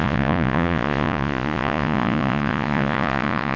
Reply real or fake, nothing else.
fake